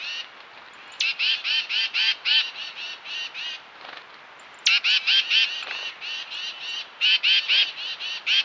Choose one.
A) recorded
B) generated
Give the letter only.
A